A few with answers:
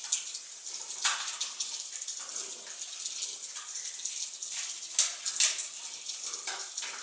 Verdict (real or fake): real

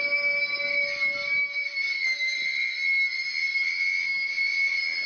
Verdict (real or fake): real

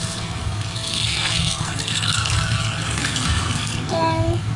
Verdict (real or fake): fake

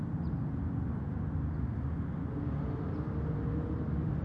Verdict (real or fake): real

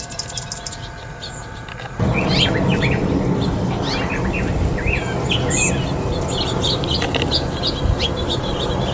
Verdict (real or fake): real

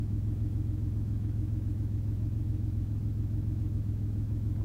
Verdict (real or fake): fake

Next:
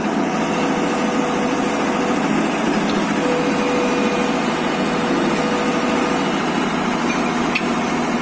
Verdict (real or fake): real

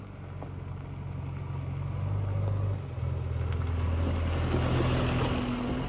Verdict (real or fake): real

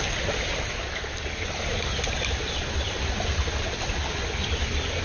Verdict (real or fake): real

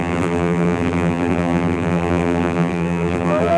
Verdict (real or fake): fake